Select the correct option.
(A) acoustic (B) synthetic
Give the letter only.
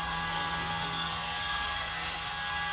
B